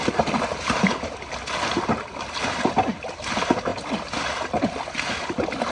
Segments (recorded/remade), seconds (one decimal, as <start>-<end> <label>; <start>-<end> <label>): 0.0-5.7 recorded